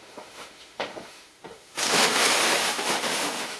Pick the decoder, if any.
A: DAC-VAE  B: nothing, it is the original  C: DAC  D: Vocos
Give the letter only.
A